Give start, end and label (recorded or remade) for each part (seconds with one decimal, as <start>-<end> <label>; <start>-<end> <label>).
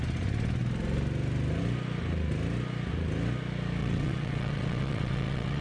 0.0-3.8 recorded; 3.8-5.6 remade